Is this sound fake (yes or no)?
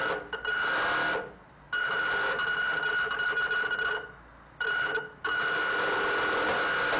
no